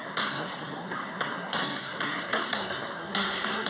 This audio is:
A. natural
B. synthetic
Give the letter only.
B